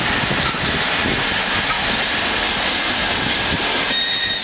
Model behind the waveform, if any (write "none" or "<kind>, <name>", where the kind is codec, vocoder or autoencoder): none